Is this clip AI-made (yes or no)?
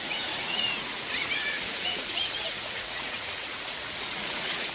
yes